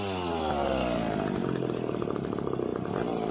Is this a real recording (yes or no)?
yes